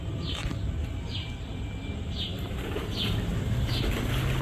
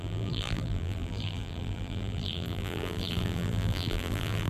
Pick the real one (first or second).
first